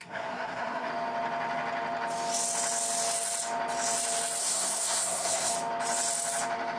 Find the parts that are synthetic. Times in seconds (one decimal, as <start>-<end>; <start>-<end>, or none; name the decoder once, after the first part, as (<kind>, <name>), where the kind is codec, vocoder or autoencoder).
0.0-0.9 (codec, SNAC); 4.4-5.5